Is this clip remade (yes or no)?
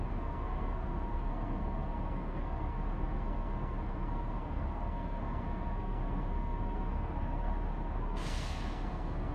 yes